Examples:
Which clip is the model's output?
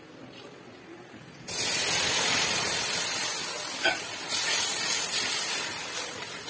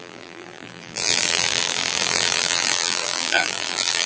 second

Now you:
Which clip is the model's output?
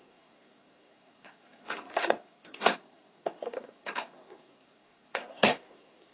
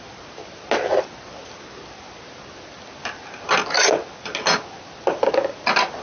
first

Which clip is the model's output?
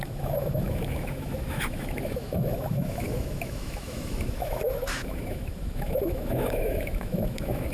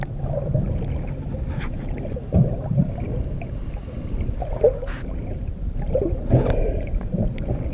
first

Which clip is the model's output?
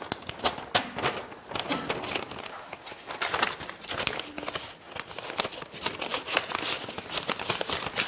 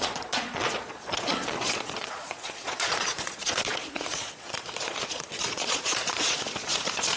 second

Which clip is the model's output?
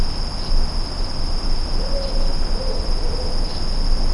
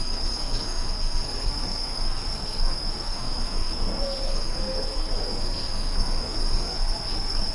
second